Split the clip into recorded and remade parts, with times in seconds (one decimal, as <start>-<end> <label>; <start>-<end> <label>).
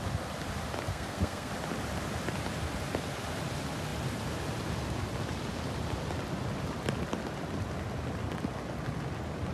0.0-0.9 recorded; 0.9-1.5 remade; 1.5-9.5 recorded